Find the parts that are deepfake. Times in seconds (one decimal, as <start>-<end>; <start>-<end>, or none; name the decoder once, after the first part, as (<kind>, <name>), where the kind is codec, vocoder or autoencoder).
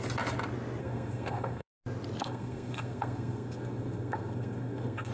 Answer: 0.8-1.7 (codec, SNAC); 2.2-5.1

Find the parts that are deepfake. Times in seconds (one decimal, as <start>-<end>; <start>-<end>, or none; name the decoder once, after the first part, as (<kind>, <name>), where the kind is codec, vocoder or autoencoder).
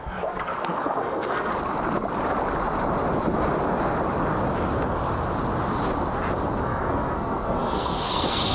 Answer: 0.0-1.5 (codec, SNAC); 6.6-8.5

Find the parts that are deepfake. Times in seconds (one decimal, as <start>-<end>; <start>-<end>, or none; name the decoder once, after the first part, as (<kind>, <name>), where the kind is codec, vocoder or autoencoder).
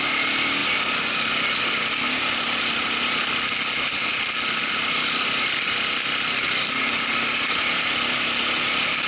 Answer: none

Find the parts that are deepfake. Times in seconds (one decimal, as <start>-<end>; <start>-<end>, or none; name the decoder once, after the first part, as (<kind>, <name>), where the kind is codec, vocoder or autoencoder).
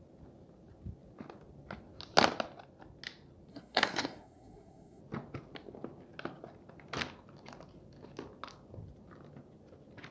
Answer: 3.5-5.0 (codec, SNAC)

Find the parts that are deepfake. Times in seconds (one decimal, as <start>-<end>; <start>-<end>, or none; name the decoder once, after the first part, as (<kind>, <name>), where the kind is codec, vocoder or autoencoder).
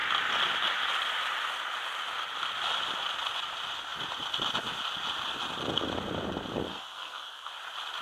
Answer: 6.7-7.5 (codec, SNAC)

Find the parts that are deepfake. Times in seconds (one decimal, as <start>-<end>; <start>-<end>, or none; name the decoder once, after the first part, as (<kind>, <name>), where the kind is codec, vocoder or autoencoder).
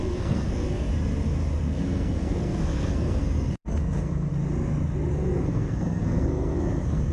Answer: 0.0-0.9 (codec, SNAC); 1.6-4.3; 5.1-7.1